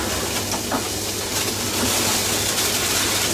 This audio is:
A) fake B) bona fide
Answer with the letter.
B